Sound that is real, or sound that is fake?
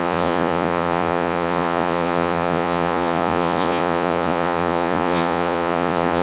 fake